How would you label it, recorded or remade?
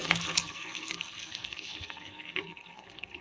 remade